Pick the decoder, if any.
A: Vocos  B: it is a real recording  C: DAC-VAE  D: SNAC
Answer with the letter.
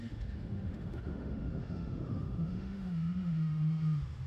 C